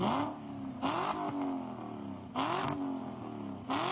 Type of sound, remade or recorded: recorded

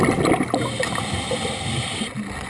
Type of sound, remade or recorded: recorded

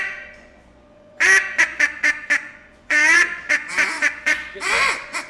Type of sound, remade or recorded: remade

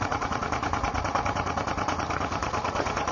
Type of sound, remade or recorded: remade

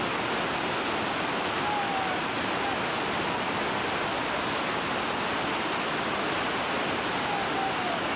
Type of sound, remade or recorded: recorded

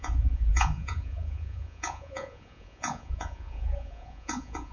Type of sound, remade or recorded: remade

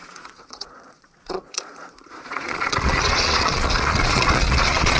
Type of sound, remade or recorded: remade